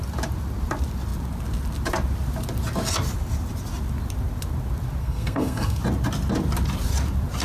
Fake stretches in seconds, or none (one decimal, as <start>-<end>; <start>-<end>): 5.0-5.8